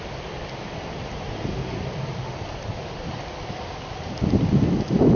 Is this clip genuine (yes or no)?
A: yes